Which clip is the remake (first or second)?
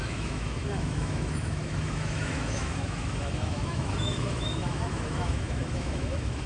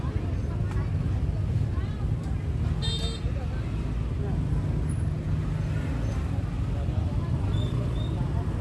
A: first